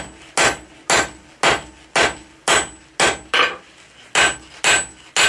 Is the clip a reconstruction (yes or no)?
no